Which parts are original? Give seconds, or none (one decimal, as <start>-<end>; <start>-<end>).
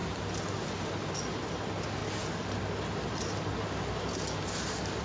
0.0-5.0